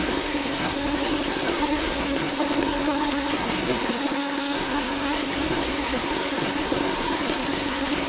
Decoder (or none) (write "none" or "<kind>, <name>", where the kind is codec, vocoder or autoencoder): codec, SNAC